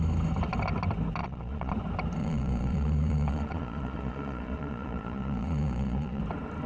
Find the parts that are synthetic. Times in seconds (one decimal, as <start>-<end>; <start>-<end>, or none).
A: 1.2-1.7; 2.2-6.2